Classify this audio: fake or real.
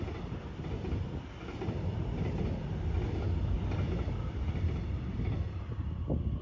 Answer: real